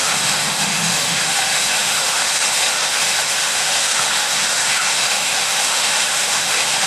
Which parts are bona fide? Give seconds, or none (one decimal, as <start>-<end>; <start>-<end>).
none